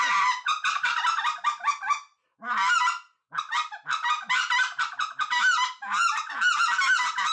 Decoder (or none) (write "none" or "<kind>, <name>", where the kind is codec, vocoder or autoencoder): none